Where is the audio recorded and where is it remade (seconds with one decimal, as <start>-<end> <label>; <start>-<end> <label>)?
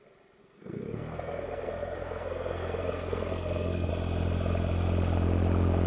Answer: 0.0-0.4 recorded; 0.4-3.9 remade; 3.9-5.9 recorded